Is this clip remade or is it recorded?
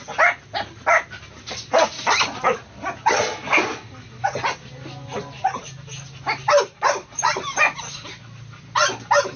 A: recorded